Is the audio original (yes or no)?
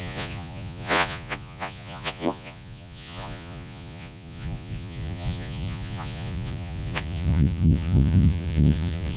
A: no